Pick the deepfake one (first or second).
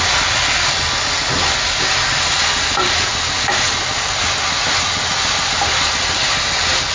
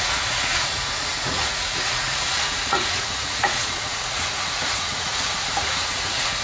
second